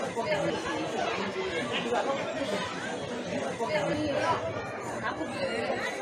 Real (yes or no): yes